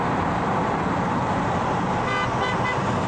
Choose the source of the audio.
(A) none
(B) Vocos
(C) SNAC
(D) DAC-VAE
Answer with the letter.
A